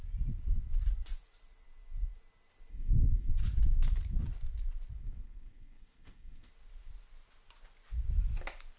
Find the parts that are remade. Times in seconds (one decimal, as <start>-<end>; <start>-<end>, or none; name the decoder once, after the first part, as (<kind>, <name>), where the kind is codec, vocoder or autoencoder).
2.7-3.3 (codec, SNAC); 5.0-6.5